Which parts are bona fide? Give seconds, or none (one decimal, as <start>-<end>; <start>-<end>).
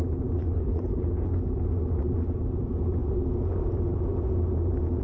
0.0-0.4; 1.4-5.0